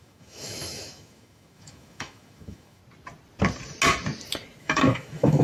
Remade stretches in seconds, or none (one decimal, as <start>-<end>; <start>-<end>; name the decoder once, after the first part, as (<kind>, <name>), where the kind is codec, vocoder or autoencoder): 0.0-2.8 (autoencoder, DAC-VAE); 4.6-5.4